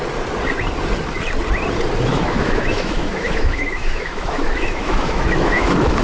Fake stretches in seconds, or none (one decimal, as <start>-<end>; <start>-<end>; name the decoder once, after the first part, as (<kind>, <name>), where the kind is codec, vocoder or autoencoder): 2.1-6.0 (autoencoder, DAC-VAE)